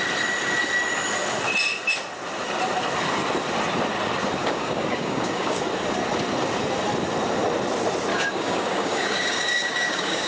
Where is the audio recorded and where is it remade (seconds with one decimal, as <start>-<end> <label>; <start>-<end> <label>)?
0.0-4.4 recorded; 4.4-5.6 remade; 5.6-8.1 recorded; 8.1-10.3 remade